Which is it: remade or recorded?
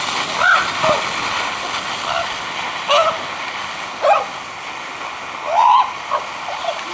recorded